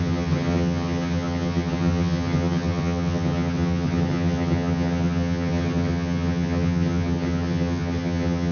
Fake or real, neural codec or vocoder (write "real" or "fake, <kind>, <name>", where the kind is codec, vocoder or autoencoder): fake, vocoder, HiFi-GAN